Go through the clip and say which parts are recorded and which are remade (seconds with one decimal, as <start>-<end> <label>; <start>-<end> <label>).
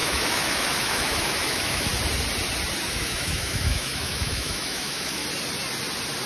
0.0-1.9 remade; 1.9-2.9 recorded; 2.9-5.2 remade; 5.2-6.3 recorded